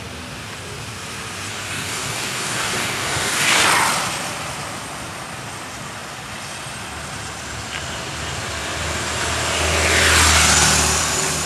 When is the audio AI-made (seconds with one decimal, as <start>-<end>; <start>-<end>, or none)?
1.5-3.6